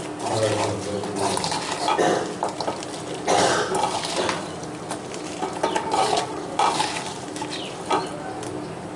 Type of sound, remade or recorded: recorded